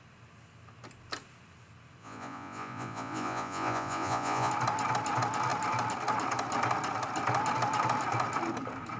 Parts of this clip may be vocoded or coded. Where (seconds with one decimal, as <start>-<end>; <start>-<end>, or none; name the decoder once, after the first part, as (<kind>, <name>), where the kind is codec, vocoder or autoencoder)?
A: 2.0-4.5 (vocoder, Vocos)